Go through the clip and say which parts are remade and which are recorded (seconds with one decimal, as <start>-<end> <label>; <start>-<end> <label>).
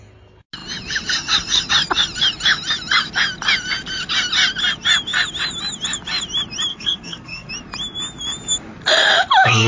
0.0-6.7 recorded; 6.7-7.5 remade; 7.5-9.7 recorded